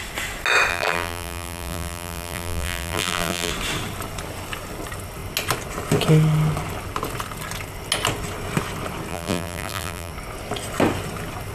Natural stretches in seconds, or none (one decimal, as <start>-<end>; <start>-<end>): 0.0-0.7; 3.5-9.1; 10.1-11.5